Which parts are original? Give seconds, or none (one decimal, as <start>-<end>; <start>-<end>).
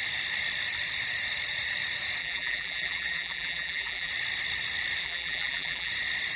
0.0-2.2; 4.1-5.0; 5.9-6.4